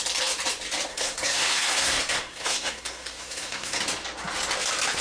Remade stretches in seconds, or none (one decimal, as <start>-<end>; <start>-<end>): 0.9-3.8